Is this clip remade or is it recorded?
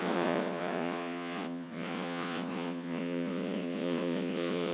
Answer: remade